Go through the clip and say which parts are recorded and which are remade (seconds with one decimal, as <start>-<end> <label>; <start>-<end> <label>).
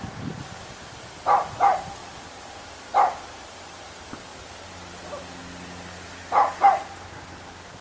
0.0-7.8 recorded